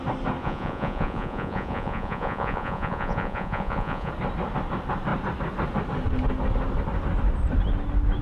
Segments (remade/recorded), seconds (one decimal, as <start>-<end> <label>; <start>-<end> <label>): 0.0-0.4 recorded; 0.4-4.1 remade; 4.1-8.2 recorded